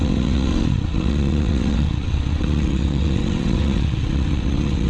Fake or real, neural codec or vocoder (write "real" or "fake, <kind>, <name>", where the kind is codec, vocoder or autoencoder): fake, vocoder, WaveNeXt